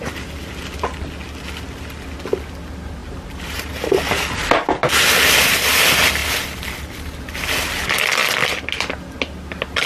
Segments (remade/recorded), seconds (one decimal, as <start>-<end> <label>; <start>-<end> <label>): 0.0-3.0 recorded; 3.0-4.0 remade; 4.0-9.9 recorded